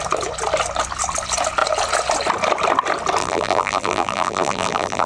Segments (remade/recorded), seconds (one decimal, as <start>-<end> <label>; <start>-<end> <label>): 0.0-3.2 recorded; 3.2-5.1 remade